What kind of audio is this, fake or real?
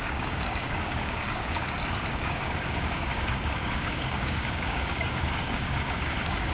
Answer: fake